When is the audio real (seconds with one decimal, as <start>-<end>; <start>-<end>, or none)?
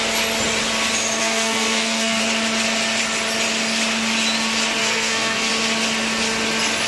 0.0-1.2; 2.2-4.8; 5.5-6.9